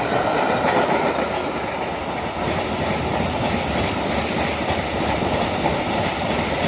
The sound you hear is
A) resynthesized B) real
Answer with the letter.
B